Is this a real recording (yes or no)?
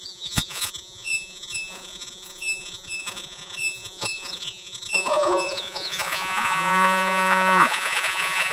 no